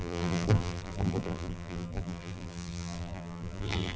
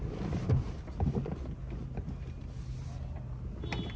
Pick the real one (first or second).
second